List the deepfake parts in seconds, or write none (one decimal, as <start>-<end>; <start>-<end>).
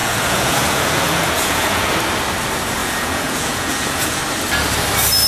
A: 0.0-1.9; 2.8-4.2